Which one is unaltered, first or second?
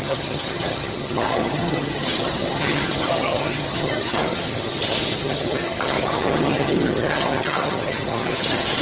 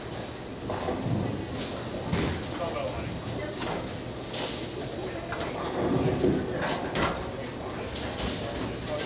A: second